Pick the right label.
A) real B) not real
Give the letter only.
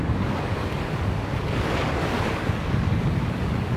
B